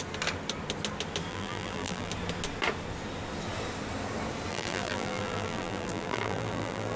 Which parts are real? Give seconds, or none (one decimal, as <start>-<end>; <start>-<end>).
0.0-1.3; 2.1-4.5